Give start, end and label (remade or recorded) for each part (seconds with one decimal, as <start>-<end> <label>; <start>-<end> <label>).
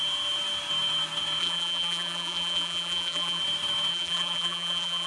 0.0-1.4 recorded; 1.4-3.4 remade; 3.4-3.9 recorded; 3.9-5.1 remade